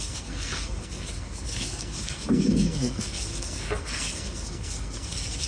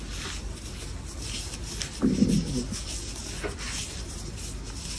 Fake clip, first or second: first